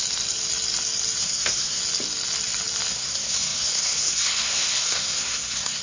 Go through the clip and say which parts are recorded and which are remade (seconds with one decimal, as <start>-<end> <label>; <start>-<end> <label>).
0.0-1.2 recorded; 1.2-1.8 remade; 1.8-2.9 recorded; 2.9-5.8 remade